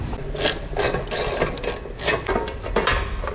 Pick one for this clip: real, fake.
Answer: real